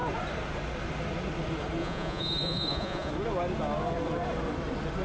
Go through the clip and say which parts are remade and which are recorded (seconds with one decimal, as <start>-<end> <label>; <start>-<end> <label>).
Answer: 0.0-1.8 recorded; 1.8-3.1 remade; 3.1-5.0 recorded